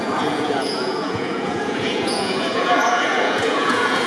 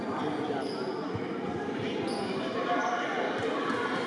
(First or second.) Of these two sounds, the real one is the second